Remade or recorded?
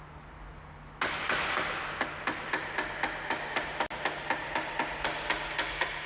recorded